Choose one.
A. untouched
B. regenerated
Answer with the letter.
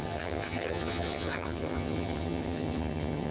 B